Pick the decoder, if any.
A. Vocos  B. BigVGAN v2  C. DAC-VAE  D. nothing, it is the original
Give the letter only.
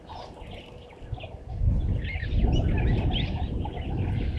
D